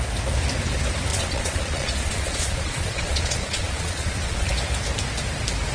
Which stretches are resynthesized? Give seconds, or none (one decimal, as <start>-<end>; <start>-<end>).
1.1-4.5